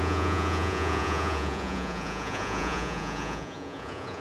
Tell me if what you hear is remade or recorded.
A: remade